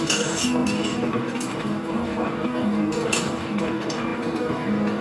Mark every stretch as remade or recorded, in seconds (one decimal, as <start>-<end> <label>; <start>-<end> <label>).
0.0-5.0 remade